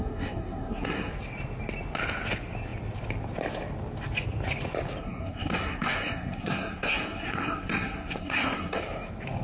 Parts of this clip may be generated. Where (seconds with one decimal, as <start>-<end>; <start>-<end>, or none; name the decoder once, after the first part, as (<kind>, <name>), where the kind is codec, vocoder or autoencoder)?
0.0-1.1 (codec, SNAC); 5.0-8.8